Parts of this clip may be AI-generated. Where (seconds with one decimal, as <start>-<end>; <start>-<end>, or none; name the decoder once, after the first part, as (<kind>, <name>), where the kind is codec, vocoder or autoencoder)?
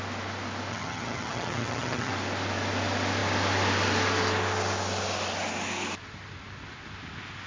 0.7-2.1 (vocoder, HiFi-GAN)